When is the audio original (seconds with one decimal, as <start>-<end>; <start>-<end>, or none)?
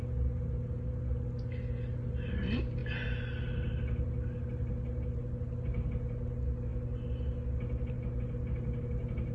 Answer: 0.0-9.3